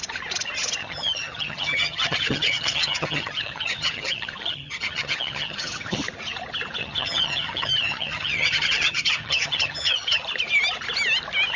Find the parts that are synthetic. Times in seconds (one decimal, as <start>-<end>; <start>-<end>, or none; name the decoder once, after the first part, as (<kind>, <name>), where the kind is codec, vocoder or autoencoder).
0.8-6.0 (vocoder, HiFi-GAN); 6.8-10.2